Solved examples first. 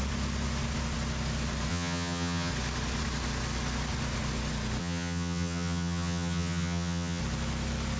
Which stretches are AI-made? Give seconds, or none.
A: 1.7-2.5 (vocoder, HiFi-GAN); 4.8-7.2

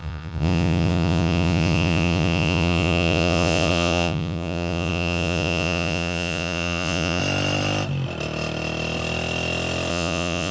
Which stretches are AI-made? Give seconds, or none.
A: 0.0-7.2 (vocoder, Vocos); 9.9-10.5

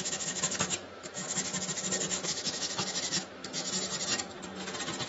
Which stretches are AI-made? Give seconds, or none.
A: 0.0-1.5 (autoencoder, DAC-VAE); 2.1-3.9

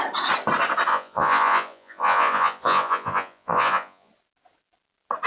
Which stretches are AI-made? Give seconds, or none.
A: 0.9-4.1 (vocoder, Vocos)

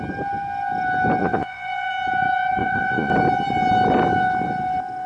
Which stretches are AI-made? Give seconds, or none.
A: 1.2-1.9 (vocoder, Vocos); 2.6-3.1

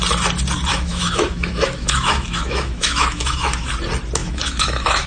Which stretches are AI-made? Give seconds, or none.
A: 0.7-3.7 (autoencoder, DAC-VAE); 4.2-5.1